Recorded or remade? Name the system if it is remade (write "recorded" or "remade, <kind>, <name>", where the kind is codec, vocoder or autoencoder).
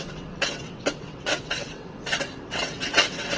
remade, vocoder, WaveNeXt